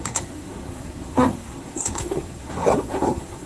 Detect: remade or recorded remade